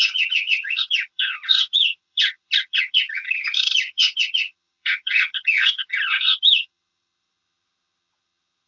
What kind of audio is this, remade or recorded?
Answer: remade